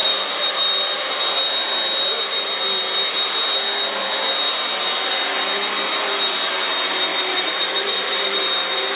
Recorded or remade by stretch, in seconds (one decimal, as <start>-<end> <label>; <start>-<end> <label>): 0.0-0.7 remade; 0.7-7.1 recorded; 7.1-8.4 remade; 8.4-9.0 recorded